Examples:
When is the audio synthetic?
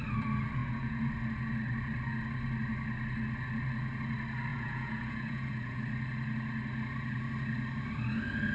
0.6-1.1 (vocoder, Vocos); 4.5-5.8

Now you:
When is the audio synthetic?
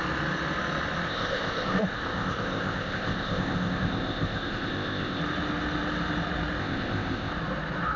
1.1-5.2 (codec, ZipCodec); 6.6-7.3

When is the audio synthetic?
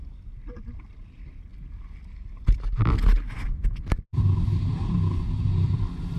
none